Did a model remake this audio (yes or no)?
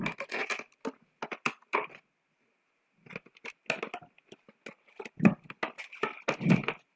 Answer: no